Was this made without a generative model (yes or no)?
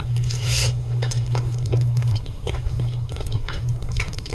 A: no